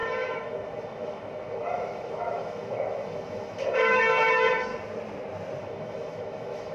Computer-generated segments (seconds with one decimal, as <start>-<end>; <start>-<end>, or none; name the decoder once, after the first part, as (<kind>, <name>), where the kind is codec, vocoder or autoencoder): 0.0-4.7 (autoencoder, DAC-VAE); 5.6-6.7